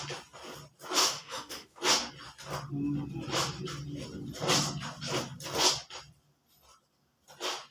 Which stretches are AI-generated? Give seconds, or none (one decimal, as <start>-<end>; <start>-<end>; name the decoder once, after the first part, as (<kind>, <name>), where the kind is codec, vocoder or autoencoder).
1.0-1.8 (autoencoder, DAC-VAE)